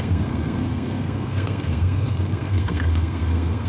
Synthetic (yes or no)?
yes